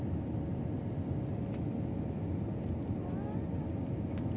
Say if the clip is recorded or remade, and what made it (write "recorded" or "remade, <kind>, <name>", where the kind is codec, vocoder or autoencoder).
recorded